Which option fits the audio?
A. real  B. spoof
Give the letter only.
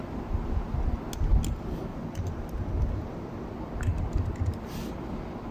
A